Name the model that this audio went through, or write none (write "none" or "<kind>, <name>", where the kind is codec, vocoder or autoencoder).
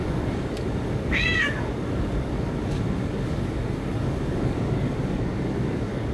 codec, DAC